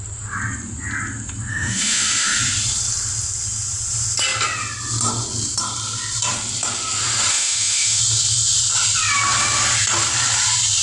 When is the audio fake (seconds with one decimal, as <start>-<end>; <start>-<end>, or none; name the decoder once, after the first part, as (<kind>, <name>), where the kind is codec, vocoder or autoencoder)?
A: 1.5-2.4 (autoencoder, DAC-VAE); 7.3-8.0